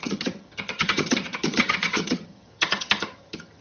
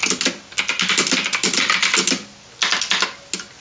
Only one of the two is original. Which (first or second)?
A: second